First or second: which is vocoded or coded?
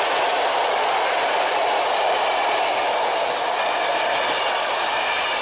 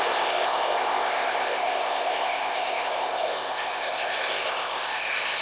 second